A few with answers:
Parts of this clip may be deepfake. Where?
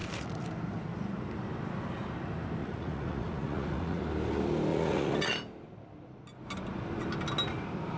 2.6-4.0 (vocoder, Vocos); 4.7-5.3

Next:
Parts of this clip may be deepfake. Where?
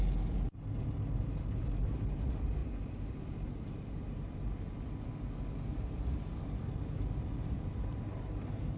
none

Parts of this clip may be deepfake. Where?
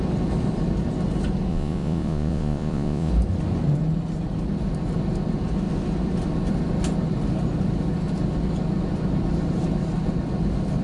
1.5-3.1 (vocoder, Vocos)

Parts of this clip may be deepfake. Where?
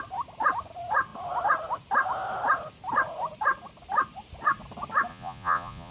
5.1-5.9 (vocoder, Vocos)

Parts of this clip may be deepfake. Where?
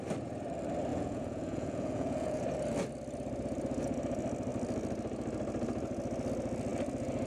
0.9-2.4 (vocoder, Vocos)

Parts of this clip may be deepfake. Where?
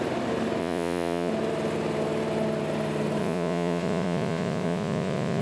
0.6-1.3 (vocoder, Vocos); 3.2-5.4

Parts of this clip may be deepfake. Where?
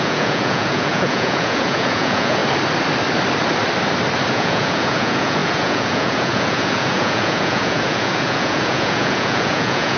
0.0-2.4 (vocoder, Vocos); 4.3-10.0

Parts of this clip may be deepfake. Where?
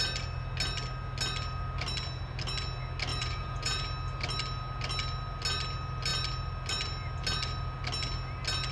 3.1-3.8 (vocoder, Vocos)